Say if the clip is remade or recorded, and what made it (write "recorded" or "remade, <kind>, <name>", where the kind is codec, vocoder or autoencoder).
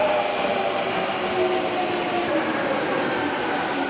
recorded